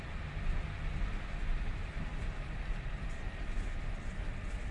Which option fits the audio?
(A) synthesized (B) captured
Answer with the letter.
B